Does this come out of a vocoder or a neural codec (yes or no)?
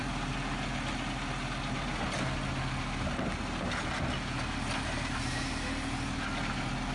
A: no